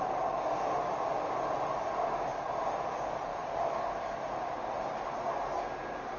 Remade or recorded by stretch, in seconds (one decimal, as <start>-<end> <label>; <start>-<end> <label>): 0.0-6.2 recorded